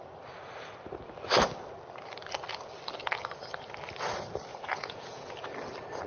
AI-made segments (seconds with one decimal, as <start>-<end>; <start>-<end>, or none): 4.5-5.3